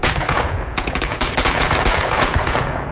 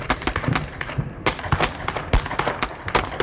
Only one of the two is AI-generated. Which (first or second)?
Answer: first